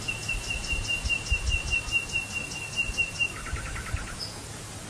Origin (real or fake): real